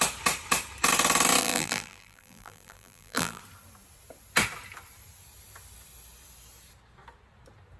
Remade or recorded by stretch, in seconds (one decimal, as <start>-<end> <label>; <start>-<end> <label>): 0.0-1.4 recorded; 1.4-3.4 remade; 3.4-7.8 recorded